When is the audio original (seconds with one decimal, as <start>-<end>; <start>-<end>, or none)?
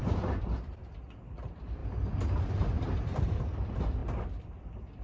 1.0-1.8; 3.4-4.0